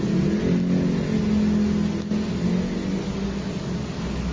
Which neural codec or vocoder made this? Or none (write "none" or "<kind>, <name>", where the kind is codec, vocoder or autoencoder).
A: none